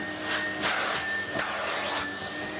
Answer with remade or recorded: recorded